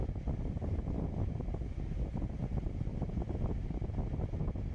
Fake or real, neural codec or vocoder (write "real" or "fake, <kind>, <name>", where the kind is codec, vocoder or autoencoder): real